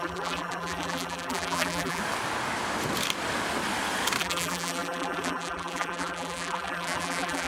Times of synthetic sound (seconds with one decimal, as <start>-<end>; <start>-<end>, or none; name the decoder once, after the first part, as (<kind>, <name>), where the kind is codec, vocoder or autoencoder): 0.0-2.0 (vocoder, BigVGAN v2); 4.2-7.5